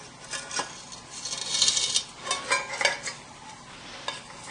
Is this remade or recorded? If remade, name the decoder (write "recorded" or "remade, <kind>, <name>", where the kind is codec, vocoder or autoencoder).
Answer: recorded